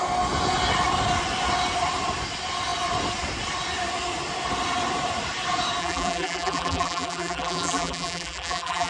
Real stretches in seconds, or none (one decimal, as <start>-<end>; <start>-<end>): 0.0-5.8